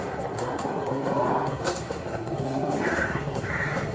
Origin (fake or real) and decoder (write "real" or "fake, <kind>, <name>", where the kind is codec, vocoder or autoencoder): fake, codec, SNAC